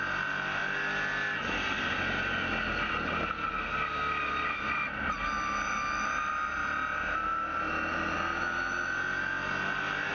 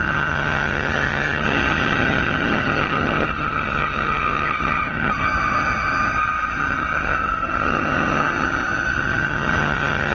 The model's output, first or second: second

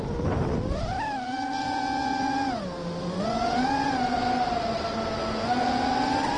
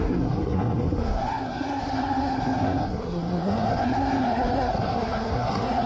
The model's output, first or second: second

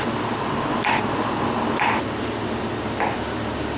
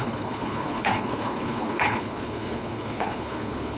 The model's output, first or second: second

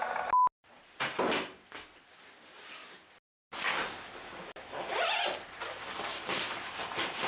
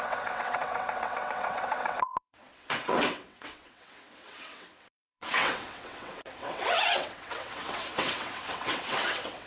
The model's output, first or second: second